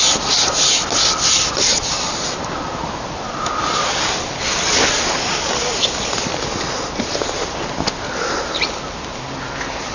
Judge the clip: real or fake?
real